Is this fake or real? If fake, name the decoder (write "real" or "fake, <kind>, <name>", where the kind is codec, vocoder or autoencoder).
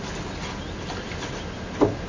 real